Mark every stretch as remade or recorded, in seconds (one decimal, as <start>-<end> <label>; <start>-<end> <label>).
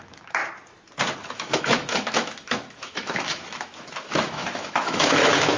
0.0-0.4 remade; 0.4-1.3 recorded; 1.3-5.6 remade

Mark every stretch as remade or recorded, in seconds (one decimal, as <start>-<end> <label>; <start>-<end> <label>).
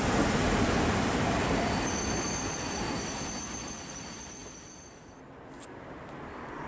0.0-6.7 recorded